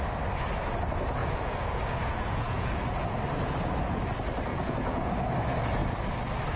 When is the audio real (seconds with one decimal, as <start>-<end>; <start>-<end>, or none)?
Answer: 0.0-1.2; 2.8-4.5; 5.1-6.6